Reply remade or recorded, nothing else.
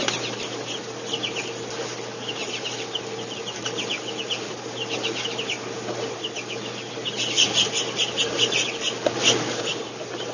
recorded